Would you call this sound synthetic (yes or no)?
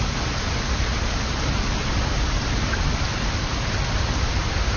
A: no